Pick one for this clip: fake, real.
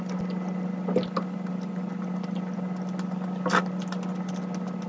real